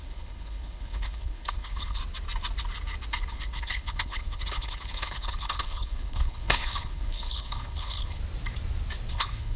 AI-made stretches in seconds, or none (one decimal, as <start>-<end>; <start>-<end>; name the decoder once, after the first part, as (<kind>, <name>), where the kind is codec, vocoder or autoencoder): 0.0-2.0 (codec, HILCodec); 3.3-8.2; 9.1-9.6